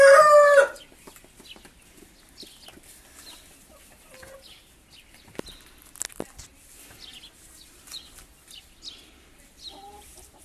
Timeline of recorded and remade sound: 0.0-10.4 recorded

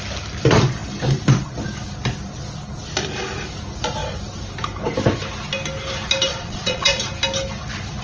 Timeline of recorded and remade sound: 0.0-6.3 recorded; 6.3-7.0 remade; 7.0-8.0 recorded

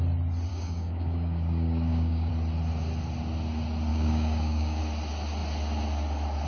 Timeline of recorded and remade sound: 0.0-0.5 recorded; 0.5-2.3 remade; 2.3-3.9 recorded; 3.9-4.8 remade; 4.8-6.5 recorded

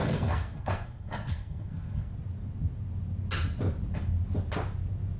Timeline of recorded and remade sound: 0.0-2.1 remade; 2.1-5.2 recorded

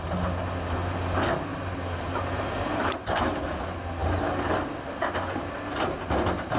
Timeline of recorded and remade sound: 0.0-1.5 recorded; 1.5-3.2 remade; 3.2-6.6 recorded

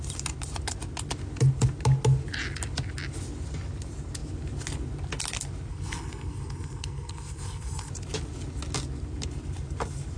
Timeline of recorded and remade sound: 0.0-5.7 recorded; 5.7-7.9 remade; 7.9-10.2 recorded